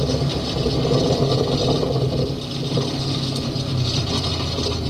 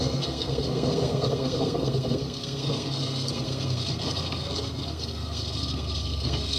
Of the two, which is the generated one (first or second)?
second